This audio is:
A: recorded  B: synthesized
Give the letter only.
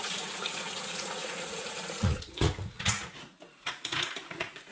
B